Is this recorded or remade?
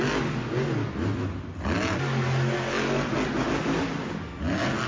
recorded